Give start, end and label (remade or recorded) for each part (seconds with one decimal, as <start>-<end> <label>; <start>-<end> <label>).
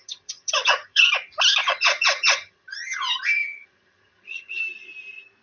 0.0-1.0 remade; 1.0-1.6 recorded; 1.6-4.6 remade; 4.6-5.4 recorded